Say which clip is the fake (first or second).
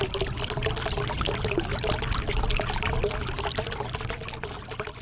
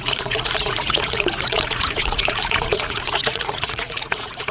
second